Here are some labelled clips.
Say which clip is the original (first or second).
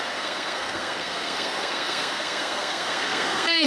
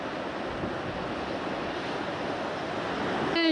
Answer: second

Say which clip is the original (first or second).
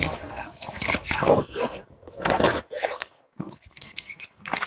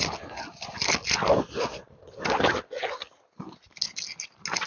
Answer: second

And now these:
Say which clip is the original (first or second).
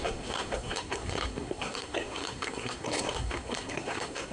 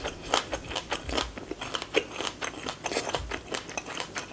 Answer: second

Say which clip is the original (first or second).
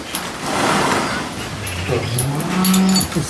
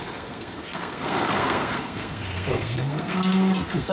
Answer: first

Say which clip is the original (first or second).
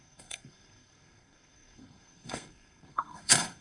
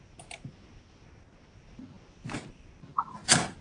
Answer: second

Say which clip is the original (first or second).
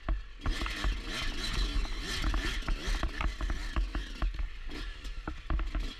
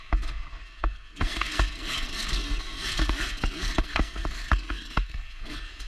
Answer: first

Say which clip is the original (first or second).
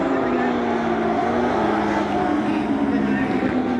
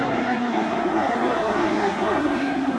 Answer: first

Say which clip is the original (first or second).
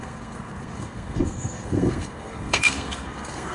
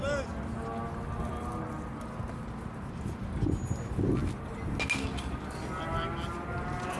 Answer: second